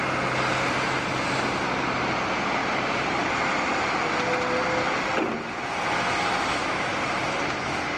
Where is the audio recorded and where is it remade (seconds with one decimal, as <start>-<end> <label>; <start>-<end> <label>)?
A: 0.0-2.6 recorded; 2.6-3.3 remade; 3.3-6.6 recorded; 6.6-7.2 remade; 7.2-8.0 recorded